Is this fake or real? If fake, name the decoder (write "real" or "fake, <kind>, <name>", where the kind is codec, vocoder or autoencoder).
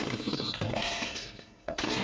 fake, codec, SNAC